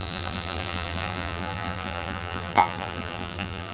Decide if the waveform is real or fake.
fake